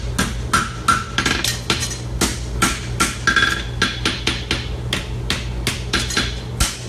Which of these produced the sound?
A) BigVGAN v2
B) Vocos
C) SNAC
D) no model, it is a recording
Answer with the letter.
D